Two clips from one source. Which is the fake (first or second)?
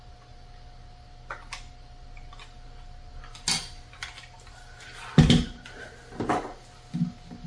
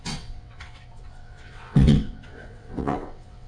second